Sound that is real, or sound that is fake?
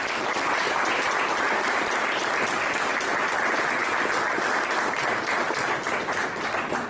fake